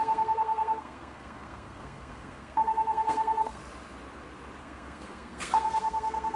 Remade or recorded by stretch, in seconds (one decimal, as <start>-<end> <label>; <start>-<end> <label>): 0.0-3.6 remade; 3.6-4.6 recorded; 4.6-6.4 remade